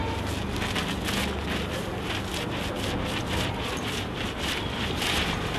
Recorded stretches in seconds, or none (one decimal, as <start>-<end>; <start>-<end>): 0.0-3.4